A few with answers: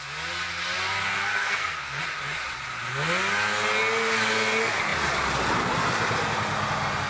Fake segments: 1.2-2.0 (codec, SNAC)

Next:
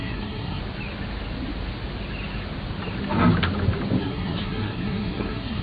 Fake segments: 0.0-0.6 (codec, SNAC); 4.0-5.6

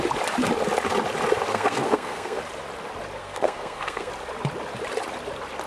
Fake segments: 1.5-2.4 (codec, SNAC); 3.2-4.1

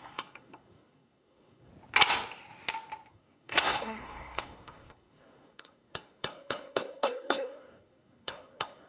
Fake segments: 0.0-1.7 (codec, SNAC); 3.1-8.9

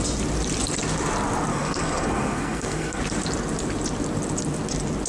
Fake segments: 1.5-3.0 (codec, SNAC)

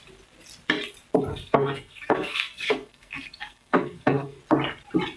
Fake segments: 1.3-4.4 (codec, SNAC)